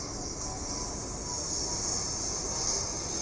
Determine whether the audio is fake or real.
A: real